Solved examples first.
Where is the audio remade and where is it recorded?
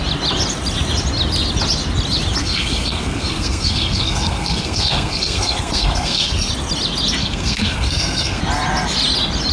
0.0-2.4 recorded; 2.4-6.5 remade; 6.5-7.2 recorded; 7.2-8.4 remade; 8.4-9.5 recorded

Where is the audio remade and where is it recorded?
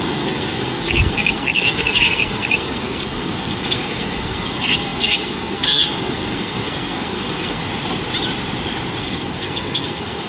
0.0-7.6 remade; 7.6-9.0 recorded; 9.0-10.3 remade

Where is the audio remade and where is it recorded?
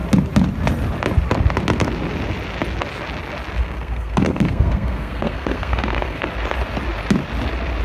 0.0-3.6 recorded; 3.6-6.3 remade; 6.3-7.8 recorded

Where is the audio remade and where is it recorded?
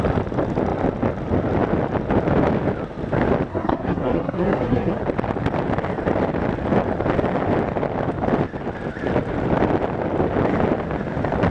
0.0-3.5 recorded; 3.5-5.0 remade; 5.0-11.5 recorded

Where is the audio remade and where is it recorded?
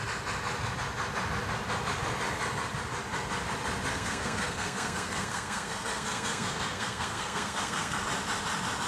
0.0-3.9 recorded; 3.9-8.0 remade; 8.0-8.9 recorded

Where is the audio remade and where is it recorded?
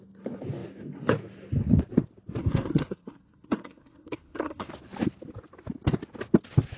0.0-2.4 recorded; 2.4-4.7 remade; 4.7-6.8 recorded